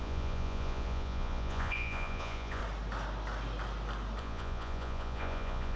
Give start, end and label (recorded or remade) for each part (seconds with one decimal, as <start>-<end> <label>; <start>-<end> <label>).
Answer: 0.0-2.6 remade; 2.6-4.2 recorded; 4.2-5.8 remade